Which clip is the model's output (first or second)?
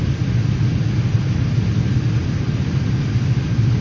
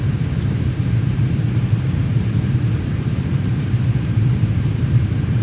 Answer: second